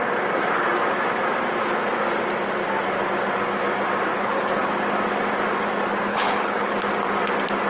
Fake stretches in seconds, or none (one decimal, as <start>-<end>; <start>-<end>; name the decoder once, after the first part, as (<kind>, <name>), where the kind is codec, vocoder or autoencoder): 4.1-4.7 (codec, HILCodec); 6.1-6.8